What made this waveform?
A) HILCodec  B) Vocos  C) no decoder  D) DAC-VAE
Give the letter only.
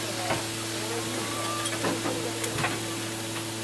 C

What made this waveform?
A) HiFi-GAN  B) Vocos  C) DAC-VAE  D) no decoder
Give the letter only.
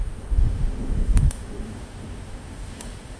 C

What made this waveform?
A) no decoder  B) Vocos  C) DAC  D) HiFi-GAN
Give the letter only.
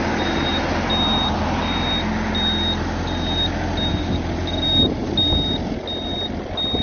A